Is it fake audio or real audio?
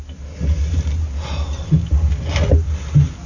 real